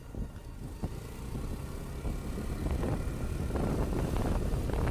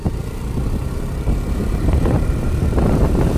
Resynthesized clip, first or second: second